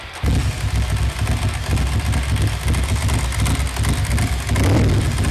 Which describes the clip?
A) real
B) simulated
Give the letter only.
A